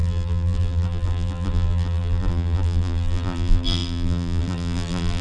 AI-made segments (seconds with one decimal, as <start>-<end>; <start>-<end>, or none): 0.0-5.2